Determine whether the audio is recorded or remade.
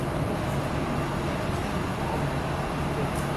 recorded